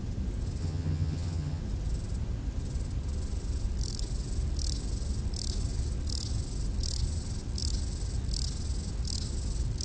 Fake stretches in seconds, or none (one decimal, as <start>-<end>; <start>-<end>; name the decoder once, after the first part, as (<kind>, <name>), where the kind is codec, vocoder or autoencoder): 0.6-1.6 (vocoder, HiFi-GAN)